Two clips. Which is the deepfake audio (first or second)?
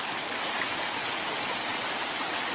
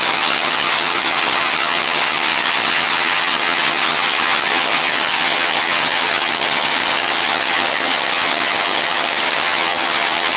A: second